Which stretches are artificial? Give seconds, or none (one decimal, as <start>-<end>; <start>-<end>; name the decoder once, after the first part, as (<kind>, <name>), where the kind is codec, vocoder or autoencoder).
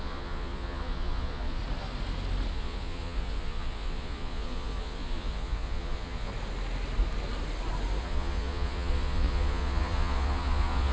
0.0-1.6 (vocoder, Vocos); 2.5-6.3; 8.0-10.9